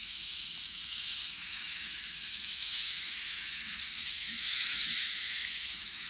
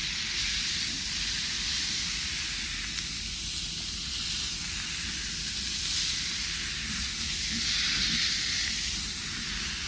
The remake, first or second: first